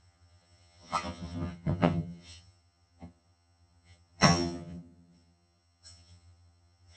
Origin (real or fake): fake